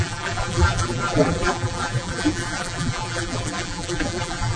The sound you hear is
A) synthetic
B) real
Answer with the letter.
A